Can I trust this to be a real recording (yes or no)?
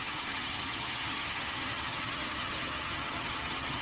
no